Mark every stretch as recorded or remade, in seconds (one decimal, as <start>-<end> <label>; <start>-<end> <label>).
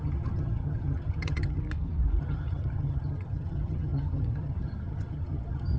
0.0-1.6 remade; 1.6-2.2 recorded; 2.2-5.8 remade